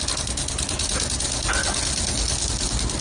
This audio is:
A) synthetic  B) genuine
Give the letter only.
B